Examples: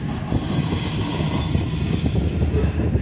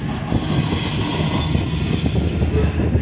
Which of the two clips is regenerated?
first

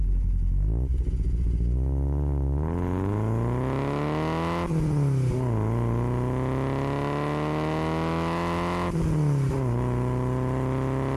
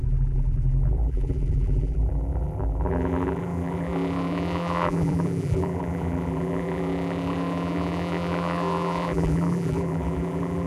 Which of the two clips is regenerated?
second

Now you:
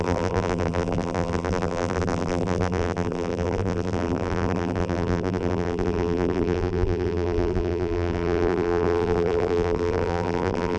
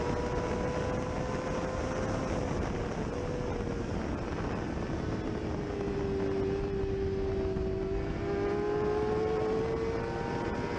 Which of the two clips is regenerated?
first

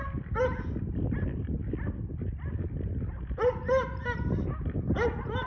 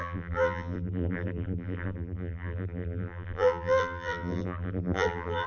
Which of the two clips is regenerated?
second